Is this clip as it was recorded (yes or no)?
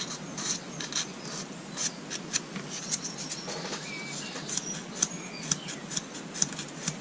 yes